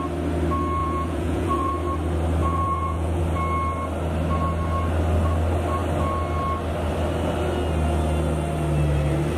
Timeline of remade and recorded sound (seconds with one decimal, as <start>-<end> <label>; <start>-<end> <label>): 0.0-0.8 recorded; 0.8-1.7 remade; 1.7-2.4 recorded; 2.4-3.2 remade; 3.2-9.4 recorded